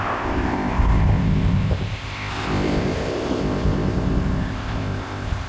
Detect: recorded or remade remade